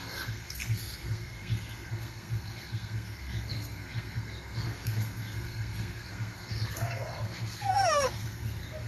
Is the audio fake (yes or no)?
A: yes